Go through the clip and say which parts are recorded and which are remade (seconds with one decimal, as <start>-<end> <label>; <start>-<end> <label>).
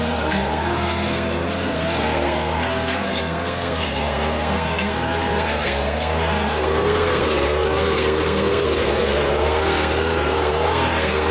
0.0-11.3 remade